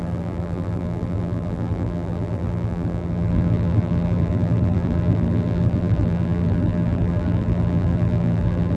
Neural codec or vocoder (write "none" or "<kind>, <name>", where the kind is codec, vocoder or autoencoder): vocoder, BigVGAN v2